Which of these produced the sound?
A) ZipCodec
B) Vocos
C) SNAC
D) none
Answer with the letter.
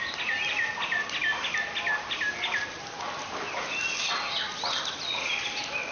D